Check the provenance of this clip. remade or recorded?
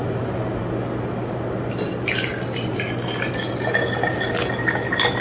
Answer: recorded